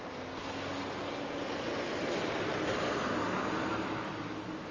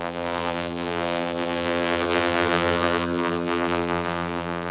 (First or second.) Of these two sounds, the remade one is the second